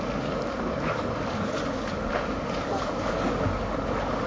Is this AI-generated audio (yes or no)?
yes